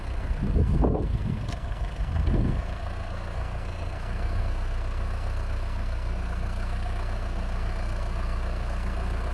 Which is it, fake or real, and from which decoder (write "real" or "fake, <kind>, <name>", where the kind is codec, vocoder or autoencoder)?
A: fake, codec, SNAC